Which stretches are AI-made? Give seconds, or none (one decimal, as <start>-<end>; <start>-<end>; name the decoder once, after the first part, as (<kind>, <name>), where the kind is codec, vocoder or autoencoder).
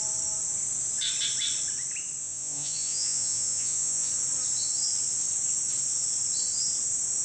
2.2-4.1 (vocoder, Vocos)